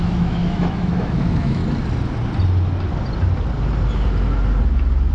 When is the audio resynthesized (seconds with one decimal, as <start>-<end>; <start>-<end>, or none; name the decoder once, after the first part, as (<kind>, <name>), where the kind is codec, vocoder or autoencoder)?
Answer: 0.0-1.6 (autoencoder, DAC-VAE)